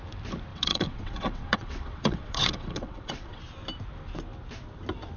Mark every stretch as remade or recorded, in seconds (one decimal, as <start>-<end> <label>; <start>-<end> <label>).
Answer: 0.0-0.5 recorded; 0.5-3.4 remade; 3.4-5.2 recorded